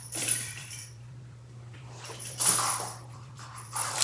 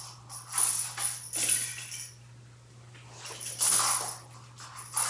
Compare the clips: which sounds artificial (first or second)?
first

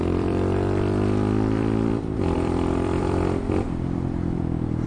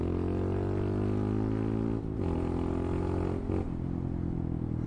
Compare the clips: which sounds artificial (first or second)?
first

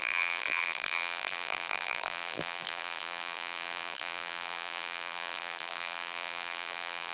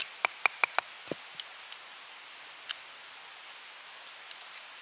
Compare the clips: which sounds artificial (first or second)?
first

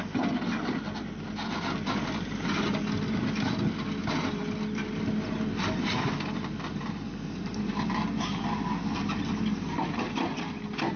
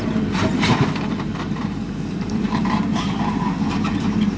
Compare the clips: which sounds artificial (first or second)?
second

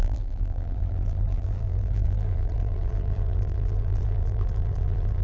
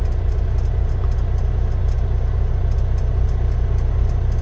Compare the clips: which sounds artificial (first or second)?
first